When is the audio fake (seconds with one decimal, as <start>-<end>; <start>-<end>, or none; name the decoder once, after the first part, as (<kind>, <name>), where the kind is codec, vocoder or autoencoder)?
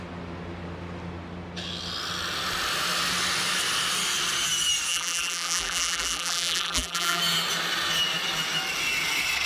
4.9-7.2 (vocoder, BigVGAN v2)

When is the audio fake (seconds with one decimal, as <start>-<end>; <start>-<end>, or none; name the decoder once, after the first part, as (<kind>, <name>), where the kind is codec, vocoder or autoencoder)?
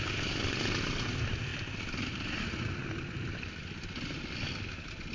none